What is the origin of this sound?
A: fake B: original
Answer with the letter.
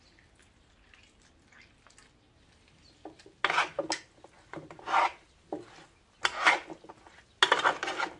B